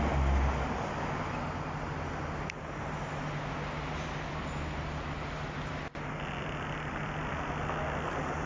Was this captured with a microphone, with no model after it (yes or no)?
yes